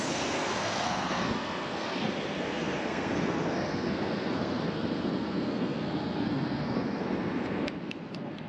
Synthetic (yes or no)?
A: yes